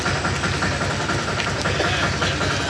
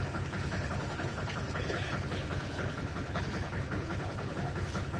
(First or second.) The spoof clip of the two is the second